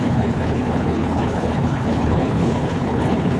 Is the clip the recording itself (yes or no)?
no